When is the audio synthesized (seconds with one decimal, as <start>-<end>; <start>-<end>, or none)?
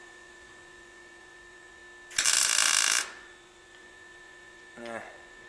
0.0-1.8; 3.0-5.5